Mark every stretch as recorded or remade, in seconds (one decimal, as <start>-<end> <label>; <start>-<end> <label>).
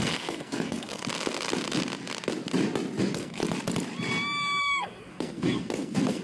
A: 0.0-1.0 remade; 1.0-3.0 recorded; 3.0-3.4 remade; 3.4-4.6 recorded; 4.6-6.2 remade